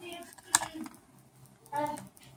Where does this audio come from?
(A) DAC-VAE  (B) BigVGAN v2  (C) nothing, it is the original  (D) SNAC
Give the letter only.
C